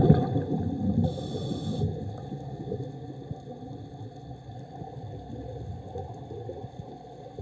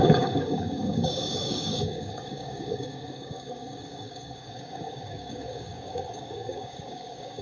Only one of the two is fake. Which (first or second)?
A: second